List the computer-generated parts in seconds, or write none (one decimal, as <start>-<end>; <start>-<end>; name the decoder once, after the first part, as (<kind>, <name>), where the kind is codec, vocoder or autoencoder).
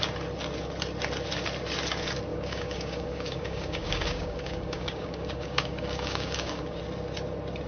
2.3-6.8 (codec, DAC)